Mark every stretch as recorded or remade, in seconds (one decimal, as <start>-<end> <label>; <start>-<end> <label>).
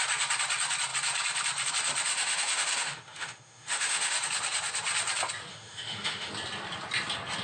0.0-2.1 recorded; 2.1-4.2 remade; 4.2-5.5 recorded; 5.5-6.3 remade; 6.3-7.4 recorded